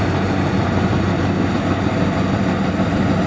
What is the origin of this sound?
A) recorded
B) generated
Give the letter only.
A